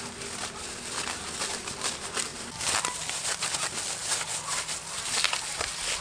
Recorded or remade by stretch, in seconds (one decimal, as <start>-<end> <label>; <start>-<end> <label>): 0.0-6.0 recorded